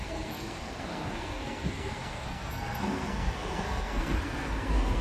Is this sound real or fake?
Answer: fake